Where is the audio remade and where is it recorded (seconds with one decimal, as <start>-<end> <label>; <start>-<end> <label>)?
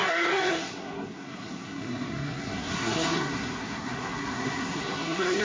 0.0-5.4 remade